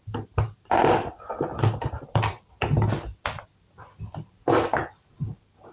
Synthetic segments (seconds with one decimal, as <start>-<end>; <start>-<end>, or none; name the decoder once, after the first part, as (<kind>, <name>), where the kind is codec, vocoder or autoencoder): none